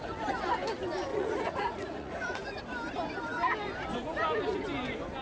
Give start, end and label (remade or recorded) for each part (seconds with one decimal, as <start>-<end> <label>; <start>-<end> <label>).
0.0-1.1 recorded; 1.1-2.6 remade; 2.6-5.2 recorded